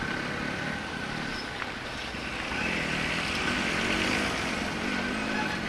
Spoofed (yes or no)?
no